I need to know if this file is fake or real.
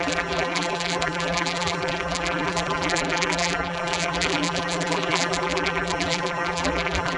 fake